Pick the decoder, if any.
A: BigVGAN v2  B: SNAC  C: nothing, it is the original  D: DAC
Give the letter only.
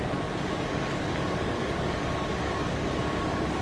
D